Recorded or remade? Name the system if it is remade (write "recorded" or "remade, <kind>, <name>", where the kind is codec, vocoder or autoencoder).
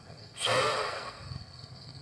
remade, codec, SNAC